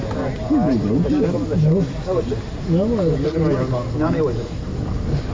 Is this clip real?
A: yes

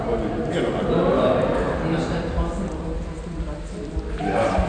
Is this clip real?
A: yes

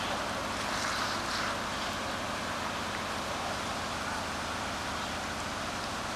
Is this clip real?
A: yes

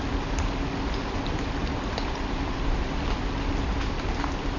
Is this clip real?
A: yes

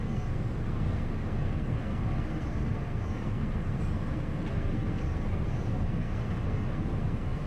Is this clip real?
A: no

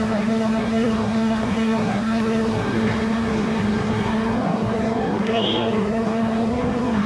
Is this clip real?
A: no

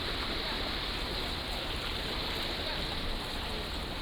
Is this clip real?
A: yes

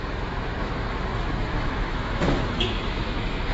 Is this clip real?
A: no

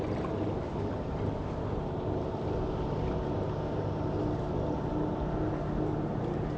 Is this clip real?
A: yes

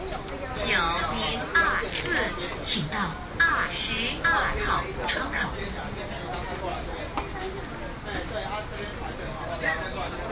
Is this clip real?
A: yes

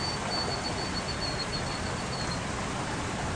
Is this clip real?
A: yes